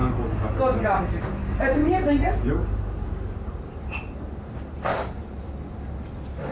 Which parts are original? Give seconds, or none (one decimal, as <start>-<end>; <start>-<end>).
0.0-1.8; 5.1-6.5